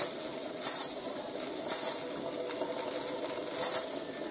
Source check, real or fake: real